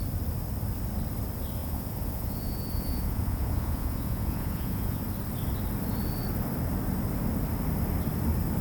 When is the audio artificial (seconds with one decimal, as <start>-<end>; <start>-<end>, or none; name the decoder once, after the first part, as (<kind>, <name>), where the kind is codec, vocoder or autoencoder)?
1.6-5.0 (vocoder, Vocos)